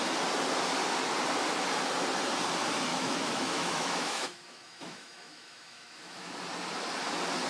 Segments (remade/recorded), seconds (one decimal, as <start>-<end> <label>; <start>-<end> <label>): 0.0-2.9 recorded; 2.9-6.3 remade; 6.3-7.5 recorded